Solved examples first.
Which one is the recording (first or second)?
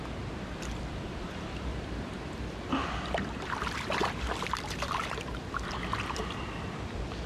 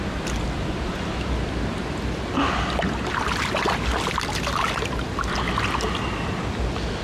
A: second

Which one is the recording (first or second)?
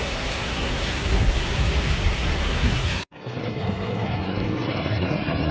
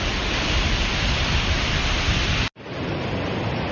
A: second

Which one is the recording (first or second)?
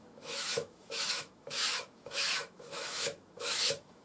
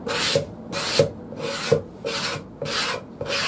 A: second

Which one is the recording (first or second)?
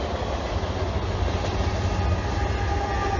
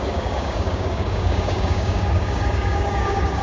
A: first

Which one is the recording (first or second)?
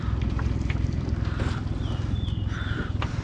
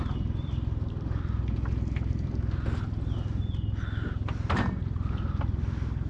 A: second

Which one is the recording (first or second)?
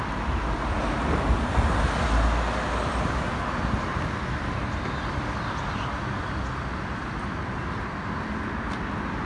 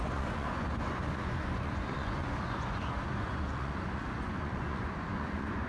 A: first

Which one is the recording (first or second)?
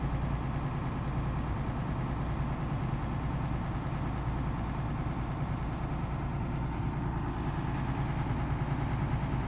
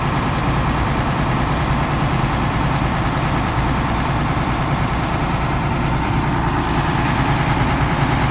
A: first